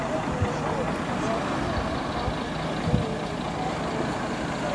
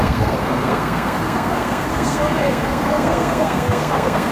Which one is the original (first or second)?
first